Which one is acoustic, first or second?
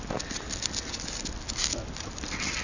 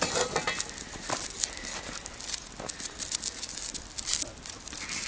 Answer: second